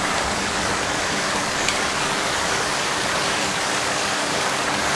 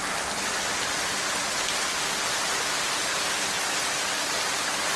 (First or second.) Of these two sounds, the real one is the second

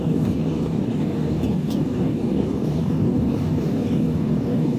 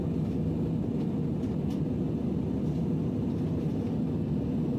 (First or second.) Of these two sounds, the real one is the second